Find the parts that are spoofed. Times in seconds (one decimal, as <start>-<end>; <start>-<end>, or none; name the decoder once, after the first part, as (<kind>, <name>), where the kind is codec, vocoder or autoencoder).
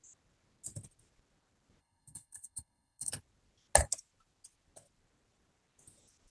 1.8-3.1 (codec, SNAC)